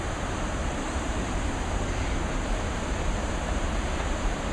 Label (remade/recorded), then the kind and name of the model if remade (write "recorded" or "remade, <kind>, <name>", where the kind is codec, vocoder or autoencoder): remade, vocoder, BigVGAN v2